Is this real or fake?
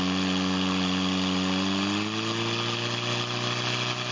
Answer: real